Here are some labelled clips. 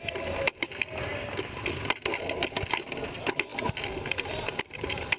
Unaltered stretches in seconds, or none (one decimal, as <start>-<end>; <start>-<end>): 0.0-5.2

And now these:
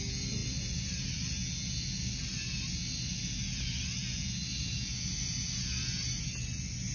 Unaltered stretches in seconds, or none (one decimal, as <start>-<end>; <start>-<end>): 0.0-6.9

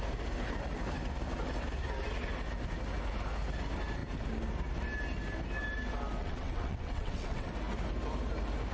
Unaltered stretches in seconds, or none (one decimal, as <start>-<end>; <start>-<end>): 0.0-6.2; 7.5-8.7